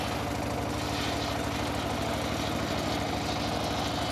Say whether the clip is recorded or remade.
recorded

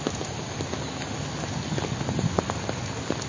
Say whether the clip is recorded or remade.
recorded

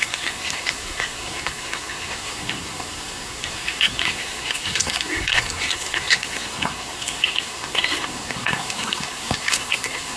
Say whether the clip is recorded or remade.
remade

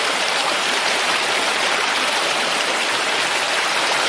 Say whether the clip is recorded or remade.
remade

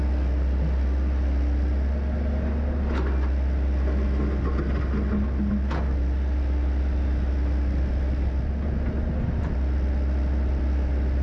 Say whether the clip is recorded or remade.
recorded